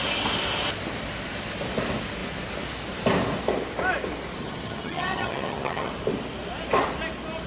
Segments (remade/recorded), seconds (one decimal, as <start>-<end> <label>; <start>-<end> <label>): 0.0-4.4 recorded; 4.4-5.9 remade; 5.9-7.5 recorded